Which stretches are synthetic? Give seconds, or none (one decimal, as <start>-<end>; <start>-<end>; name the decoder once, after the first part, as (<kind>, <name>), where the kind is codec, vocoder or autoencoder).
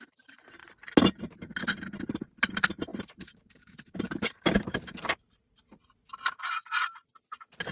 0.0-0.6 (vocoder, BigVGAN v2); 1.2-7.7